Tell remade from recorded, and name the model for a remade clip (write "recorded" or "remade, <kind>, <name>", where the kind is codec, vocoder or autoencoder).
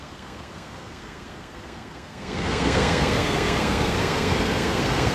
remade, codec, SNAC